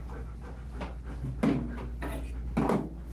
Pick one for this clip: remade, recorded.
recorded